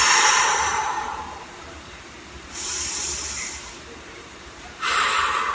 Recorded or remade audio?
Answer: remade